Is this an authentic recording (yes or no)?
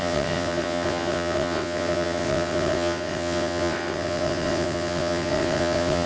no